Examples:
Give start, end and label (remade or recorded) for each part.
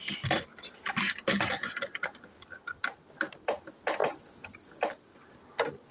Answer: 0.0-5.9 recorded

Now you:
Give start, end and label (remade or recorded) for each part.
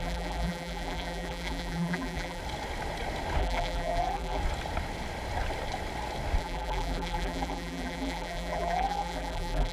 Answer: 0.0-2.4 remade; 2.4-3.4 recorded; 3.4-4.4 remade; 4.4-6.4 recorded; 6.4-9.7 remade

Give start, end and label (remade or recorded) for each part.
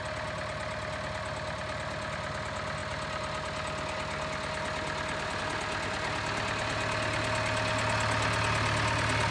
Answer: 0.0-9.3 recorded